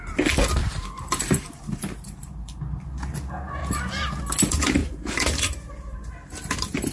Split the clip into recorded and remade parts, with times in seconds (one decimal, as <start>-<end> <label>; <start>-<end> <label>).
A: 0.0-0.6 recorded; 0.6-2.6 remade; 2.6-3.6 recorded; 3.6-4.2 remade; 4.2-4.8 recorded; 4.8-6.1 remade; 6.1-6.9 recorded